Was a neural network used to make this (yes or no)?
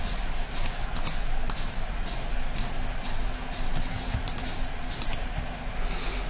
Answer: no